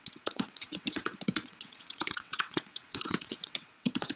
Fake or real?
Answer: fake